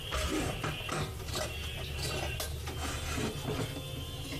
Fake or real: real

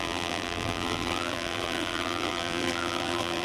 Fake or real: fake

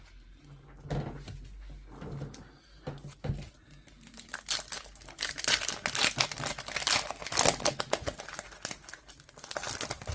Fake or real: real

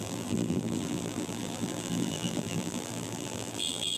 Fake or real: fake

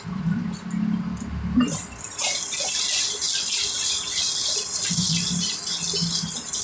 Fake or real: real